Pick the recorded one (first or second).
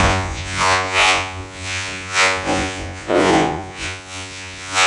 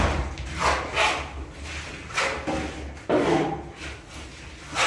second